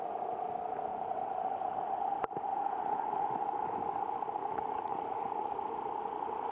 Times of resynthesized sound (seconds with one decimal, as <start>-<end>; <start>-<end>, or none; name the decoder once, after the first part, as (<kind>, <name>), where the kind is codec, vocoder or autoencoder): 2.5-3.3 (vocoder, Vocos); 4.4-6.1